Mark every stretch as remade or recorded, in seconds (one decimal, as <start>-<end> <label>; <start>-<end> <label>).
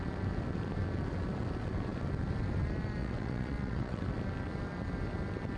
0.0-3.0 recorded; 3.0-4.0 remade; 4.0-5.6 recorded